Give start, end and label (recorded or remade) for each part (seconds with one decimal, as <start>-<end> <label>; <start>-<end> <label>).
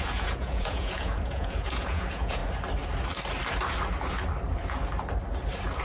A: 0.0-2.4 remade; 2.4-5.8 recorded